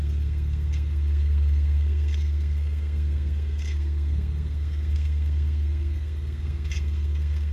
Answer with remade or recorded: remade